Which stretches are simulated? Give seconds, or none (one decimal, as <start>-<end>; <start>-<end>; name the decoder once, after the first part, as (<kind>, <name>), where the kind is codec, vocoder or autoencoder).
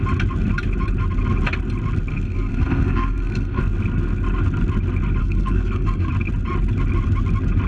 2.1-3.6 (codec, SNAC); 5.2-6.1